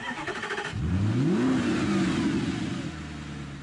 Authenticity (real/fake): real